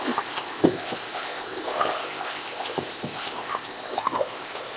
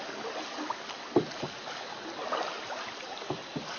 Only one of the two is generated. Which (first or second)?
first